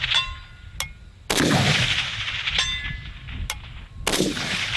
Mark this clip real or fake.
real